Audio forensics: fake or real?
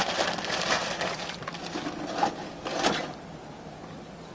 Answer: real